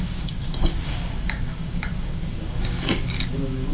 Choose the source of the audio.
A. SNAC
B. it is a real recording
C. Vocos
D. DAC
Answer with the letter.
D